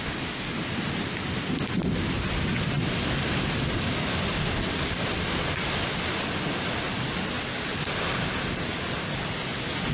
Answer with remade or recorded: recorded